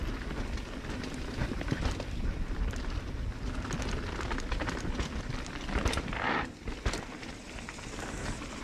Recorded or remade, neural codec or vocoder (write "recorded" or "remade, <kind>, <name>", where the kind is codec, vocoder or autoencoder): recorded